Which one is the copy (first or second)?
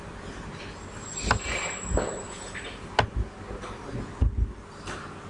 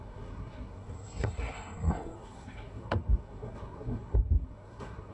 second